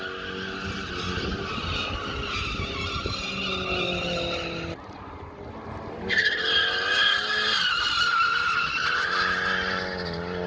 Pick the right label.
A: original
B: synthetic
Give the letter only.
A